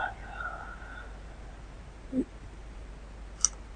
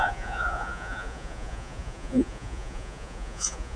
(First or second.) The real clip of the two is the first